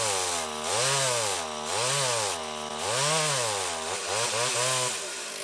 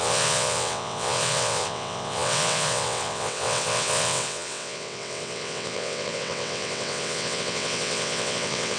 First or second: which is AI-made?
second